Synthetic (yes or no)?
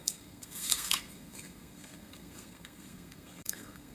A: yes